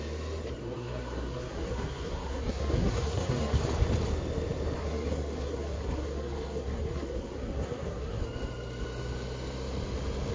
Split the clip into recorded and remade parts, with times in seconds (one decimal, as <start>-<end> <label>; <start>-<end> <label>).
0.0-0.6 recorded; 0.6-3.6 remade; 3.6-4.8 recorded; 4.8-8.2 remade; 8.2-10.3 recorded